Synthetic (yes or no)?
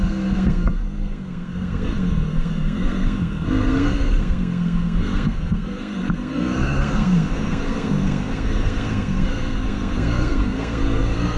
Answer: yes